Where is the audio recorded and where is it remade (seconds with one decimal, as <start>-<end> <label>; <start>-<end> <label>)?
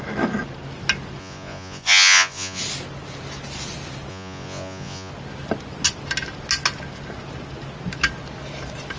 0.0-1.2 recorded; 1.2-2.6 remade; 2.6-4.1 recorded; 4.1-5.1 remade; 5.1-9.0 recorded